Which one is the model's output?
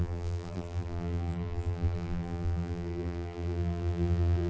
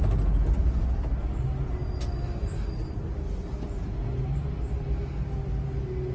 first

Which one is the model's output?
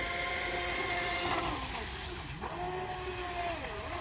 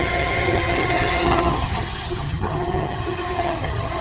second